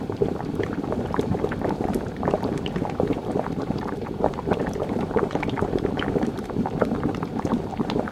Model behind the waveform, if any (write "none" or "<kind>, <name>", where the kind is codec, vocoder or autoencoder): vocoder, BigVGAN v2